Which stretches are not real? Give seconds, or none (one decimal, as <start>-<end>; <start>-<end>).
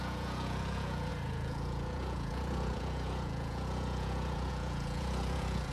0.0-5.7